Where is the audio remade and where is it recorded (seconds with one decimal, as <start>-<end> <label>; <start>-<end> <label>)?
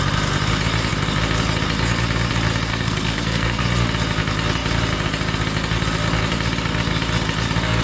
0.0-2.7 recorded; 2.7-3.6 remade; 3.6-7.8 recorded